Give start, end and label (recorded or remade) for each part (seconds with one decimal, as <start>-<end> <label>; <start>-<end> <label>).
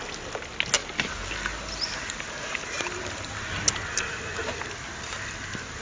0.0-5.8 recorded